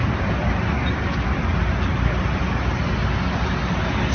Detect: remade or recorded recorded